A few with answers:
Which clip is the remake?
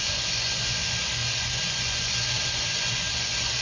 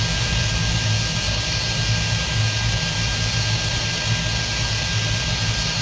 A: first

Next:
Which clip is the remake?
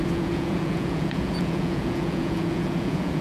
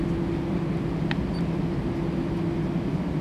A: first